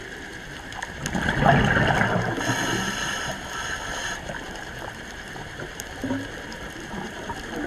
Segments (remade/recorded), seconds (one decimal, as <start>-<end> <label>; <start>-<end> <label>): 0.0-1.0 remade; 1.0-2.9 recorded; 2.9-7.7 remade